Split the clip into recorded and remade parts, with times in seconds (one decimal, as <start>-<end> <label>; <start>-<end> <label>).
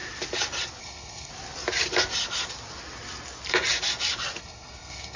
0.0-0.8 recorded; 0.8-1.3 remade; 1.3-4.4 recorded; 4.4-5.2 remade